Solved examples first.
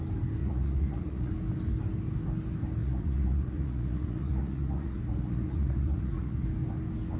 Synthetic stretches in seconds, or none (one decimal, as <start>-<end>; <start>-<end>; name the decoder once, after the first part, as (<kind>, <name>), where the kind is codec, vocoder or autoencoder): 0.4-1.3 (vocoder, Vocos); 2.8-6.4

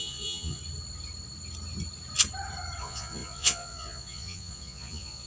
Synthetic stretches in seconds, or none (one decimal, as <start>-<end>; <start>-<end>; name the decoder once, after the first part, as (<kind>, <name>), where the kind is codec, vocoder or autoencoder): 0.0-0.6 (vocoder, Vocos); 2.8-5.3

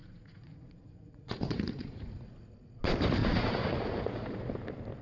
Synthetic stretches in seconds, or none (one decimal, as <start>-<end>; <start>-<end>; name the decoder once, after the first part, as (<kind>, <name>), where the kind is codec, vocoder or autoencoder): 0.0-2.5 (vocoder, Vocos); 3.2-4.5

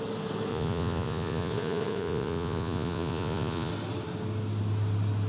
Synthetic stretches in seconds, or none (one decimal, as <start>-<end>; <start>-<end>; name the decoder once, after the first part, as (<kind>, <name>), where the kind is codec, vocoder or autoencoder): 0.5-3.7 (vocoder, Vocos)

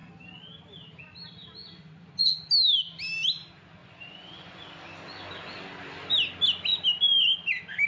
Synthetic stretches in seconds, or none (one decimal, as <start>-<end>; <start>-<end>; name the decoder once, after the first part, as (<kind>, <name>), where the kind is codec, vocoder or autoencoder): 1.6-2.4 (vocoder, Vocos); 3.8-4.6